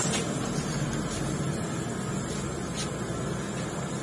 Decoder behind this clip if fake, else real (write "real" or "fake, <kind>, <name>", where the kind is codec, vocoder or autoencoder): real